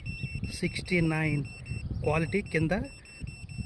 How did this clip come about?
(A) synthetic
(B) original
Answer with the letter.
B